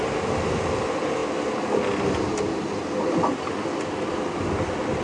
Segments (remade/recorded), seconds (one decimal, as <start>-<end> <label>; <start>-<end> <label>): 0.0-5.0 recorded